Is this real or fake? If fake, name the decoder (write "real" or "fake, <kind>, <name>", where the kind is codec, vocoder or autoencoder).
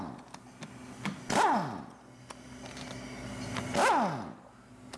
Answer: real